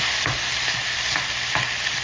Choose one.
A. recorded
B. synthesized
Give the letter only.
A